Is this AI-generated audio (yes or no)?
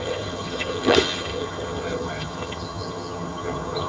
yes